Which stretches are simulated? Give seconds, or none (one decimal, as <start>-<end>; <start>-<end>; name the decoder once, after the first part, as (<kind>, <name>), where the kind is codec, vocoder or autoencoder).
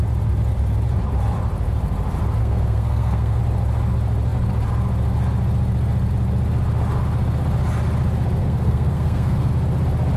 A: 2.4-3.4 (codec, SNAC); 8.4-9.5